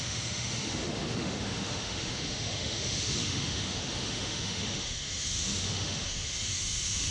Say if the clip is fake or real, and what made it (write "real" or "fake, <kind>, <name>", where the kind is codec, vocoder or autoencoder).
fake, autoencoder, DAC-VAE